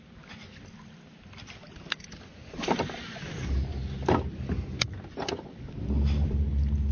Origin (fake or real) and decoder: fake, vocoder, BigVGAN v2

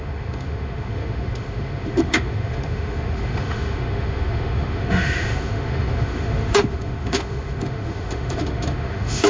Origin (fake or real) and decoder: fake, autoencoder, DAC-VAE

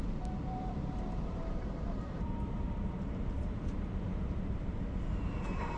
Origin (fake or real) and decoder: fake, vocoder, BigVGAN v2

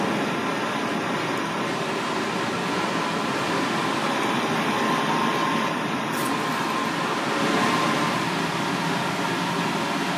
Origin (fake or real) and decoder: real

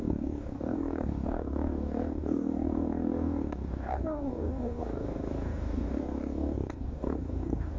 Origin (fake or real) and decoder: fake, codec, DAC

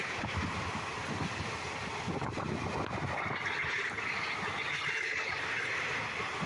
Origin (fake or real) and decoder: real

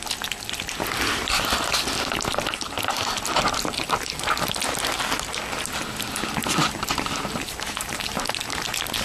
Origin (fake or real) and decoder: real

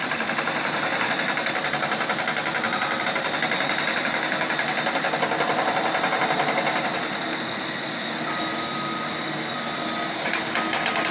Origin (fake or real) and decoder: real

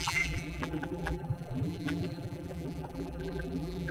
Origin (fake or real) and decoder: fake, vocoder, BigVGAN v2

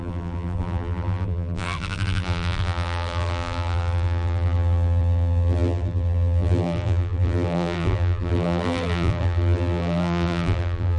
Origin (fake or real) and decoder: fake, vocoder, BigVGAN v2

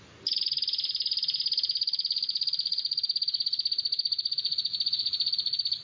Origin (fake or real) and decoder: real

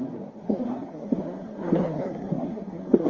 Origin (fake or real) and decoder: fake, codec, SNAC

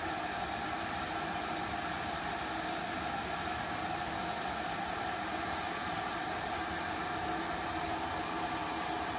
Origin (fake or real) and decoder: real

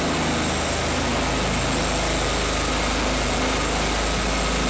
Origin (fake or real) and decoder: real